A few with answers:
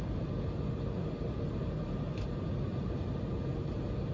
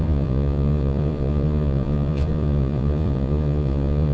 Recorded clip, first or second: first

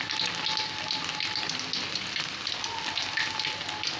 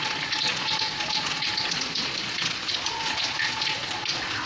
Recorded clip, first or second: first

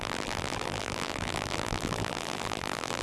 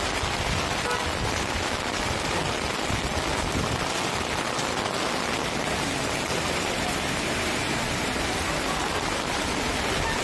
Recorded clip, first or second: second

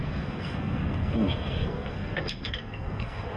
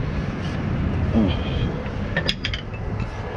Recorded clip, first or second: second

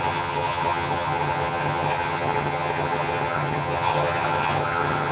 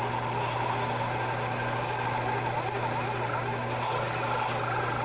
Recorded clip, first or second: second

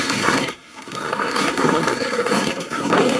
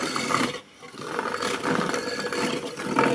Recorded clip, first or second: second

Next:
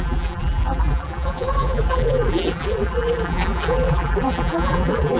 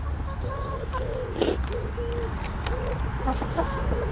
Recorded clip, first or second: second